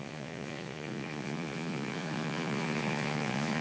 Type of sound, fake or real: fake